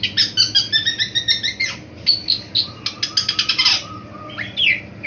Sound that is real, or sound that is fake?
real